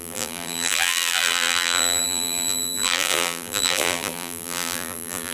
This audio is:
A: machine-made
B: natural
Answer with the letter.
A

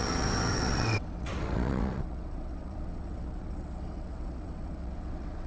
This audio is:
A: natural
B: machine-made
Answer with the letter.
B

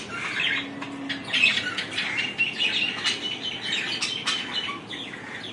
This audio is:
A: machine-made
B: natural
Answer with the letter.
B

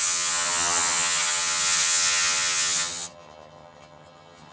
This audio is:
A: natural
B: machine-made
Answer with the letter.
B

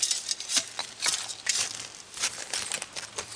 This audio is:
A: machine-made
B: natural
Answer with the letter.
B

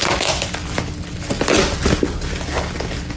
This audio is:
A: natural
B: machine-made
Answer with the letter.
A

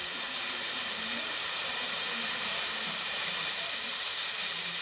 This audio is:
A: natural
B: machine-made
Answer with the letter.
B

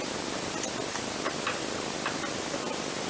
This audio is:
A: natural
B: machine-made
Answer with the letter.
A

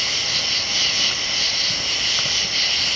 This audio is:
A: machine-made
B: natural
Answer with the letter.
B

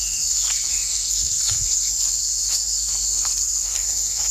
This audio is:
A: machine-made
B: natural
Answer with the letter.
A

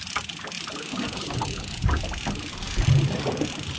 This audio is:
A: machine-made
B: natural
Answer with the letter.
B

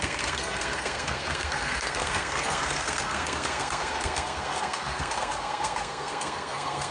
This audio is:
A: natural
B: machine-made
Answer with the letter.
B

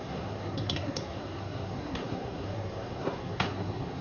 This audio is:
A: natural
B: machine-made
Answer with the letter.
B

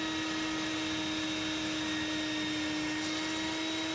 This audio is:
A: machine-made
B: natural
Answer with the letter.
B